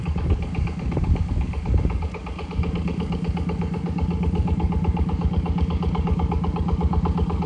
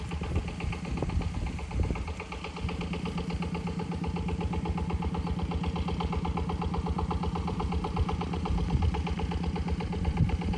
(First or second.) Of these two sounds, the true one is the second